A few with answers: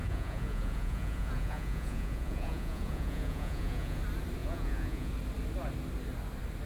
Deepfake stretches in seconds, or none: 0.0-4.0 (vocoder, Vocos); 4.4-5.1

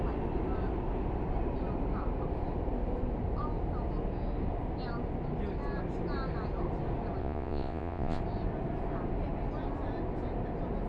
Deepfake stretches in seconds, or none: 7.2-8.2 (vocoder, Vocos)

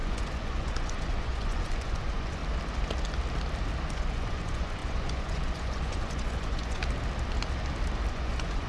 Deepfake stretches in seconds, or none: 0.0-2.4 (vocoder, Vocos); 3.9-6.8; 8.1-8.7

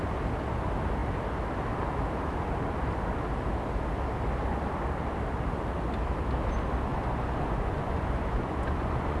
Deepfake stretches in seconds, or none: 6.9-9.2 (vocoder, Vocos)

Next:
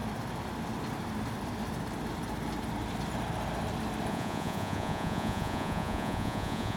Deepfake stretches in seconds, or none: 4.1-6.8 (vocoder, Vocos)